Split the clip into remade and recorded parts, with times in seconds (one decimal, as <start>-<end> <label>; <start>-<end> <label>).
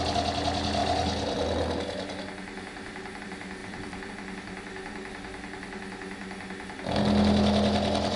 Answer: 0.0-3.6 recorded; 3.6-4.1 remade; 4.1-8.2 recorded